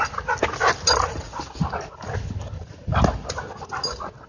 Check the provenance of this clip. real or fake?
real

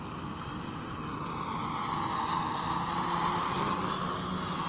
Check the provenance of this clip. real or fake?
real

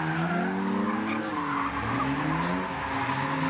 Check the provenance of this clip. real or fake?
real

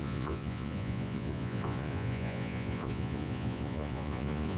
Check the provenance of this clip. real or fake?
fake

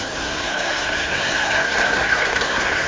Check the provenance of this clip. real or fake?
fake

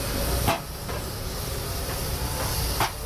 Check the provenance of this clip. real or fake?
real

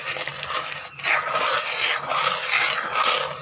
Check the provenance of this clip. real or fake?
real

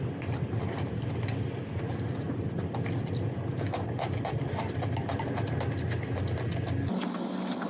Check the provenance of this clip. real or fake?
real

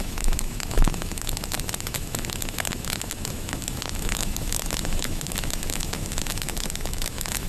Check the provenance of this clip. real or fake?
fake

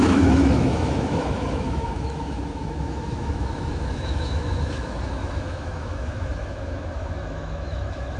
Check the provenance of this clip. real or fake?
fake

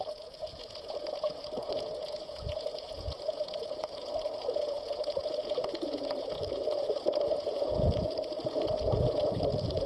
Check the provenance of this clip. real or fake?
fake